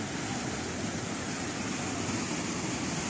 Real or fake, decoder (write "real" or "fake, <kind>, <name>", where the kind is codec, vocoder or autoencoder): real